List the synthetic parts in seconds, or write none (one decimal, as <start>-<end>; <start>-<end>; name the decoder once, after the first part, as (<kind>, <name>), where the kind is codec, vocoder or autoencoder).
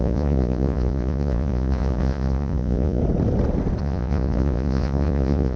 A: 0.0-3.0 (vocoder, Vocos); 3.8-5.6